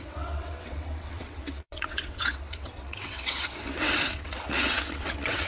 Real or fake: fake